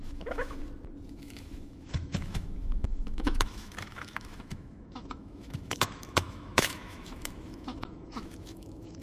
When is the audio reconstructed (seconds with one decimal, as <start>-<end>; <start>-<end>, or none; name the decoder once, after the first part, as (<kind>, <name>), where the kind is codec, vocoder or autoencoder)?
0.0-0.6 (autoencoder, DAC-VAE); 1.1-9.0